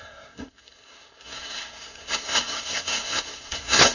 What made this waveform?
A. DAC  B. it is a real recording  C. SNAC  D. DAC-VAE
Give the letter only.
C